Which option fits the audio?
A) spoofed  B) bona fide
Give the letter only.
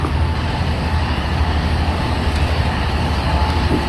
A